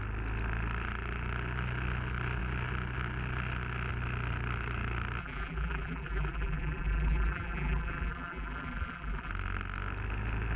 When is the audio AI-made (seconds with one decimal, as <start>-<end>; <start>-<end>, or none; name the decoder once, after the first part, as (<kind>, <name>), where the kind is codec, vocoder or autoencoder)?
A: 5.2-9.3 (vocoder, BigVGAN v2)